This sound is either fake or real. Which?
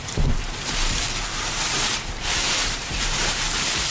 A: fake